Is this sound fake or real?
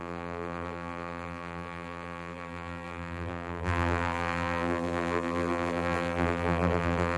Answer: fake